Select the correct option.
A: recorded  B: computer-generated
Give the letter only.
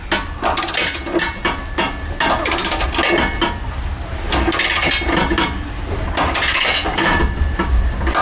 A